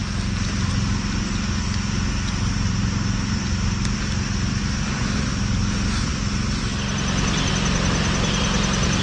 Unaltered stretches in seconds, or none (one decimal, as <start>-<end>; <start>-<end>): 0.0-9.0